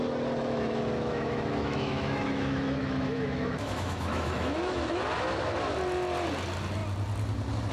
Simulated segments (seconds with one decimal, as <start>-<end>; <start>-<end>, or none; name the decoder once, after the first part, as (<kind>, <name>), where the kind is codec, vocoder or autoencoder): 0.4-5.0 (autoencoder, DAC-VAE)